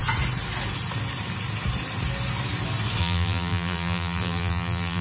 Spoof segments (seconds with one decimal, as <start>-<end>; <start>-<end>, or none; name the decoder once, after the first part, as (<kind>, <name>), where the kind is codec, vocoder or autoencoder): 3.0-5.0 (vocoder, BigVGAN v2)